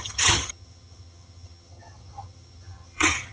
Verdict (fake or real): fake